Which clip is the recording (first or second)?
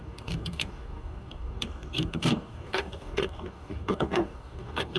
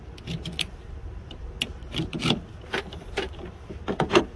second